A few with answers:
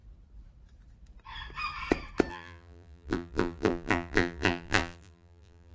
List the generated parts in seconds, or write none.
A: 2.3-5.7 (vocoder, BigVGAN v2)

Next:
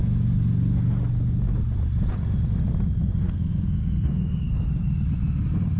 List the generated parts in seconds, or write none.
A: 3.0-4.7 (codec, SNAC)

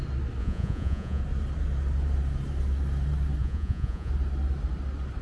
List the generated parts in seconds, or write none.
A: 0.4-1.2 (vocoder, Vocos); 3.4-4.1